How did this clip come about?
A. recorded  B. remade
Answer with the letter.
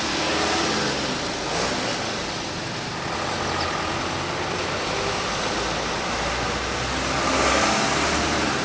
A